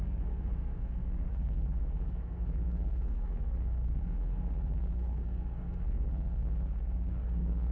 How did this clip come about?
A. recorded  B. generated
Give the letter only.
B